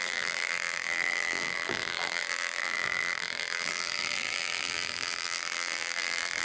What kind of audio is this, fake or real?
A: fake